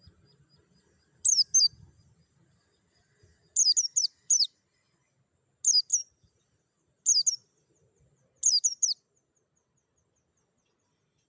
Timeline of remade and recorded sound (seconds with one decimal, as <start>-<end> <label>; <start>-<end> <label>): 0.0-11.3 recorded